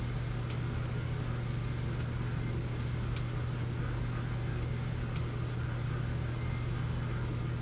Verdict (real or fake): real